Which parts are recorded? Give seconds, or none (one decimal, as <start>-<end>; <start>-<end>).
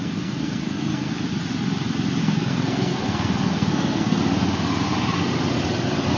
1.1-2.2; 4.2-6.2